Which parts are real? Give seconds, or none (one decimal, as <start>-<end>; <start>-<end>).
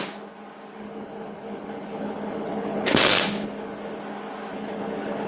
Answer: 0.0-0.8; 4.0-4.5